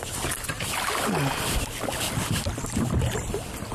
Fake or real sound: real